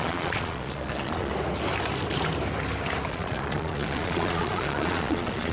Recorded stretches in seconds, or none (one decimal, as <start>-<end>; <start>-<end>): 1.3-3.1